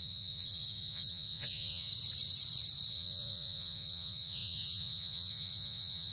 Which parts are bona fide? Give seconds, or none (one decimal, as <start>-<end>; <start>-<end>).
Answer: 1.9-2.9

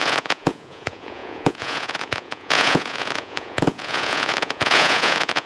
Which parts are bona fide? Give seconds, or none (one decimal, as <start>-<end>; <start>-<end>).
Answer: none

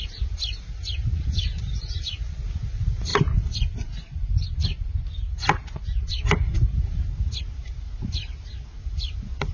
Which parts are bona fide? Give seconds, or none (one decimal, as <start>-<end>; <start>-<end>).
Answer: 0.0-9.5

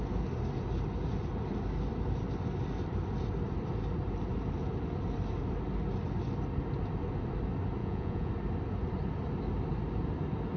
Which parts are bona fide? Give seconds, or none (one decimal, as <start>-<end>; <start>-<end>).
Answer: 0.0-7.8; 8.3-10.6

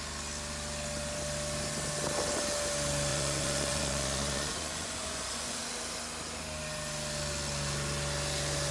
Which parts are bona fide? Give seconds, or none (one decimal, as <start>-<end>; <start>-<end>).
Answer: 0.0-3.1; 5.6-8.7

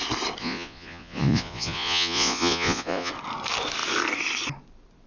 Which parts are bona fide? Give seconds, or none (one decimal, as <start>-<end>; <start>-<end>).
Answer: 0.0-0.4; 3.1-5.1

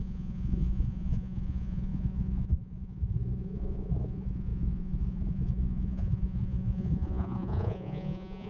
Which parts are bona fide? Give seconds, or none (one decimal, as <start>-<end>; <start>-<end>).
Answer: none